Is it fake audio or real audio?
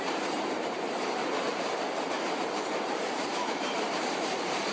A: fake